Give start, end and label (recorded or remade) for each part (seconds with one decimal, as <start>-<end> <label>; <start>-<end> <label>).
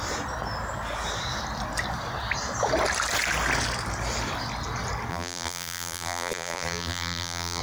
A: 0.0-5.1 recorded; 5.1-7.6 remade